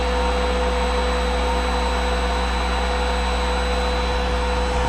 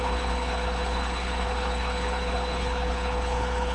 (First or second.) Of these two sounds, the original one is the first